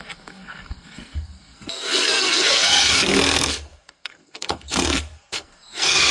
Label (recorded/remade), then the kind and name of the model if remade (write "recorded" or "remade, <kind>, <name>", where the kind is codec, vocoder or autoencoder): remade, codec, SNAC